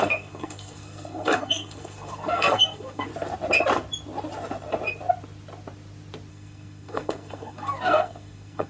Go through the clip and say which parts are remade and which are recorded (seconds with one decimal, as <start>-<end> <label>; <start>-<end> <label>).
0.0-3.1 remade; 3.1-6.3 recorded; 6.3-8.7 remade